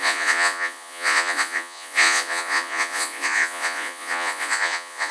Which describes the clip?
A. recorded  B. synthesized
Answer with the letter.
B